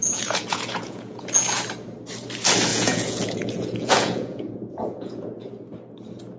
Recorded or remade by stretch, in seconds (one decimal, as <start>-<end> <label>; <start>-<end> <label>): 0.0-1.6 remade; 1.6-2.7 recorded; 2.7-5.5 remade; 5.5-6.4 recorded